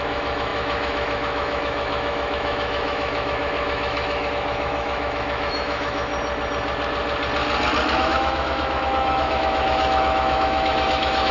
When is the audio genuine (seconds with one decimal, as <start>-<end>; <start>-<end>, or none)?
6.1-8.0